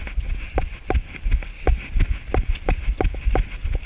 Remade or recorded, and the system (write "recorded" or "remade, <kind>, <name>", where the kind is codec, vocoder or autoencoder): recorded